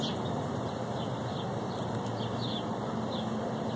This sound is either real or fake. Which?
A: real